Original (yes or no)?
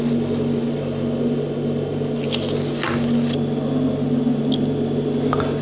yes